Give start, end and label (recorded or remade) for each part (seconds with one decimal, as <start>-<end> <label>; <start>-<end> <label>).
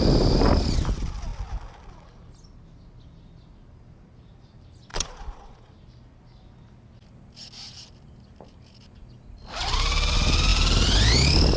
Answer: 0.0-4.9 recorded; 4.9-5.7 remade; 5.7-11.6 recorded